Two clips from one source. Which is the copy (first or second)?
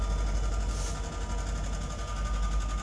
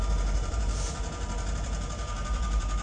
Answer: second